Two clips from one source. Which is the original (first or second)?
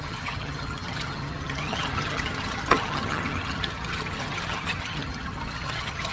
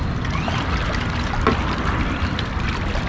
second